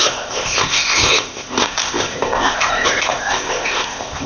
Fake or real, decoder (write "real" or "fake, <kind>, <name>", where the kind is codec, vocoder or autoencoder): fake, codec, ZipCodec